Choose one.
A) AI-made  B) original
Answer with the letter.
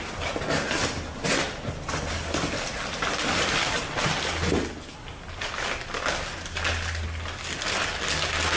B